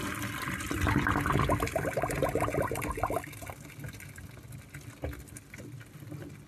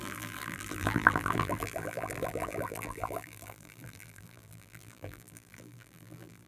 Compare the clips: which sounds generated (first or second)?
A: second